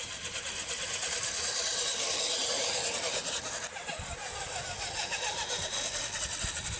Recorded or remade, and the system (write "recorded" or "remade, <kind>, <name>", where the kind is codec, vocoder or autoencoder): recorded